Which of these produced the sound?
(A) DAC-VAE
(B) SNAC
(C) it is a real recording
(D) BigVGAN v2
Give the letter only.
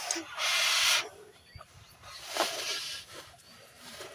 D